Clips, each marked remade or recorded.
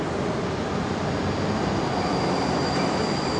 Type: recorded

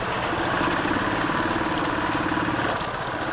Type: recorded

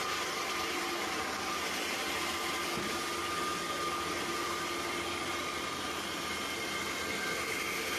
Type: recorded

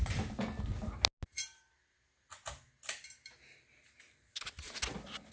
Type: recorded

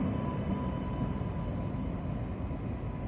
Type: recorded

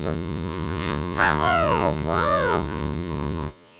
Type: remade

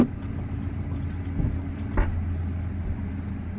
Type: recorded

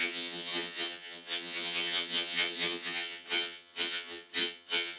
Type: remade